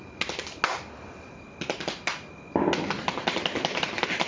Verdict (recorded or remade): recorded